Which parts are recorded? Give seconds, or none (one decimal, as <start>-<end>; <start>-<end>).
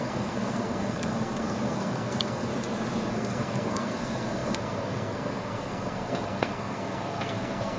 2.5-3.1